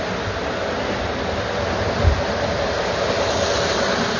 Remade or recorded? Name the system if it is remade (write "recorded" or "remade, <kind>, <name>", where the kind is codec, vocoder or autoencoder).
recorded